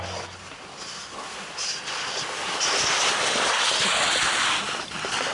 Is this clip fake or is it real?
real